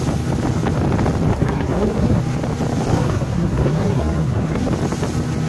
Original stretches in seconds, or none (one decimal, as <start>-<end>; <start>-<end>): 0.0-1.3; 2.2-2.9; 4.7-5.5